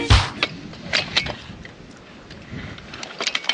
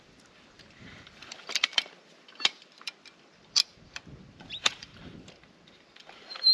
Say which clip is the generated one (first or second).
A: second